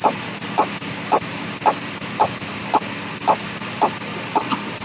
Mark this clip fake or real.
real